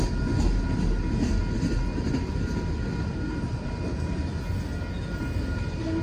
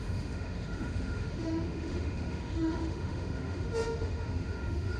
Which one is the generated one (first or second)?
second